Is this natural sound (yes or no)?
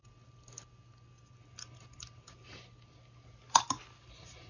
yes